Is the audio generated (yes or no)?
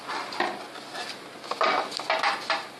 no